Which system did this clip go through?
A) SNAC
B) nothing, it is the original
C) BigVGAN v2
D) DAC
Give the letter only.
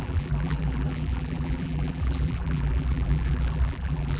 C